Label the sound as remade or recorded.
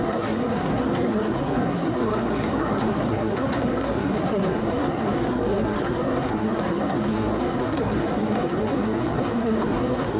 remade